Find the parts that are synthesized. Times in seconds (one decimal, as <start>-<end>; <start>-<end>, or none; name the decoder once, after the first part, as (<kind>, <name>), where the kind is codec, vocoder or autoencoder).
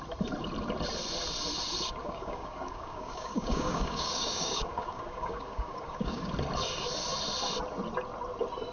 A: 2.0-6.3 (codec, DAC)